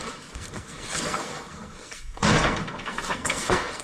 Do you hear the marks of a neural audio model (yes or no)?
yes